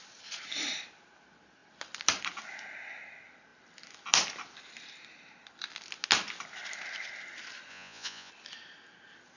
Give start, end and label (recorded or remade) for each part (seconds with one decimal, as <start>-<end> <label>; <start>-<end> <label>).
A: 0.0-7.7 recorded; 7.7-8.3 remade; 8.3-9.4 recorded